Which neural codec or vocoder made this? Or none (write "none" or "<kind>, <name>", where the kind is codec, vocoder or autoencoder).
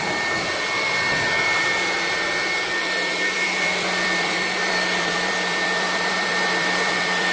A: vocoder, BigVGAN v2